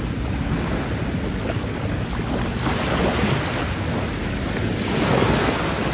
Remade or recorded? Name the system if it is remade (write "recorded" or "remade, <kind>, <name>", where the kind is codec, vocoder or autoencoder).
recorded